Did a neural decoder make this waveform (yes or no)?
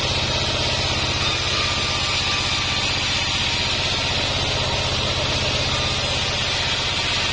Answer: no